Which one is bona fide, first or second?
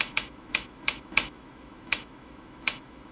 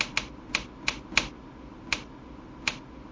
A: second